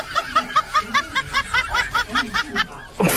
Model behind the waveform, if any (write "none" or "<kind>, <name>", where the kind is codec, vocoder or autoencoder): none